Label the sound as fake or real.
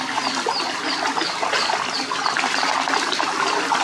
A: real